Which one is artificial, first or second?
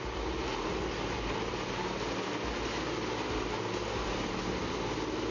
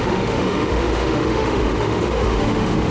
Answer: second